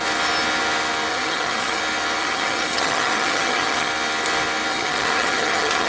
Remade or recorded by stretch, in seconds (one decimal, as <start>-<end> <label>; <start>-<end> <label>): 0.0-1.1 recorded; 1.1-1.8 remade; 1.8-2.2 recorded; 2.2-3.9 remade; 3.9-4.7 recorded; 4.7-5.9 remade